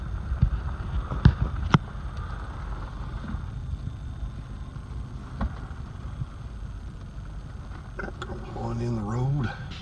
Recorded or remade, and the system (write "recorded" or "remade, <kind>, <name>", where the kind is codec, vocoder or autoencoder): recorded